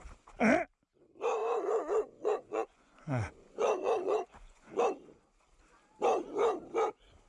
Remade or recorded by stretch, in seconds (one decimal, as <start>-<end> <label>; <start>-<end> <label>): 0.0-1.4 recorded; 1.4-4.8 remade; 4.8-7.3 recorded